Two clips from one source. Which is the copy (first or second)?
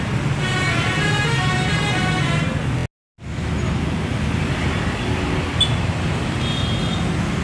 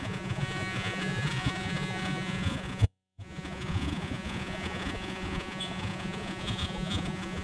second